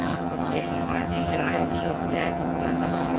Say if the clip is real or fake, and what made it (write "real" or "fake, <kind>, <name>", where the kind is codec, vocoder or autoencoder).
fake, vocoder, HiFi-GAN